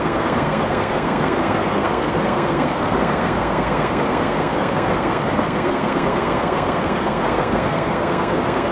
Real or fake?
fake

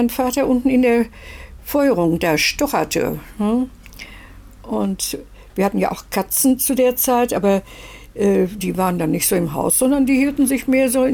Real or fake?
real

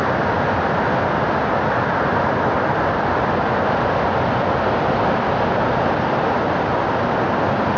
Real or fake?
real